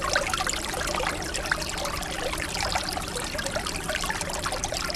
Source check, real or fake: real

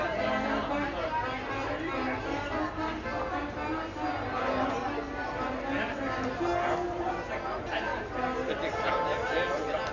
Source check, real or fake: real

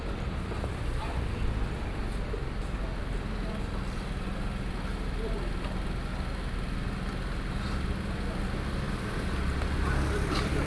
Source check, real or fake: real